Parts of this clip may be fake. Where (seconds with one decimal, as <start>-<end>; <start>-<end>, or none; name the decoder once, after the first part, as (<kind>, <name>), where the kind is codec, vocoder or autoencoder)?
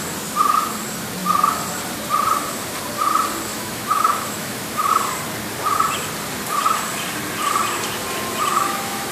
3.5-4.9 (autoencoder, DAC-VAE); 8.5-9.1